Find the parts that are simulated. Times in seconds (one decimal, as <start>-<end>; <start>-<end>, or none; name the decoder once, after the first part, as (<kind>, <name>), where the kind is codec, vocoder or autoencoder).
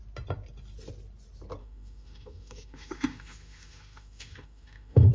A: 1.6-5.1 (autoencoder, DAC-VAE)